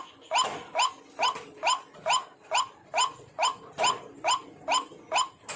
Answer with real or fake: real